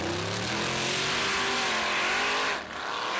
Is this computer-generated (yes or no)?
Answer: no